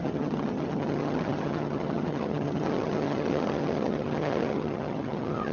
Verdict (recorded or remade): remade